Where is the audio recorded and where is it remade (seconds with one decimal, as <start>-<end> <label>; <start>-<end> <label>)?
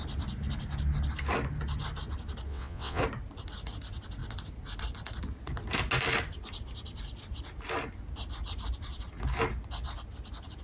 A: 0.0-2.5 recorded; 2.5-3.0 remade; 3.0-10.6 recorded